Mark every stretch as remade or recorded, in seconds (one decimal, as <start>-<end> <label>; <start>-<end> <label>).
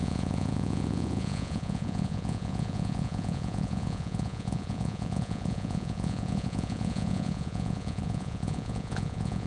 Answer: 0.0-9.5 remade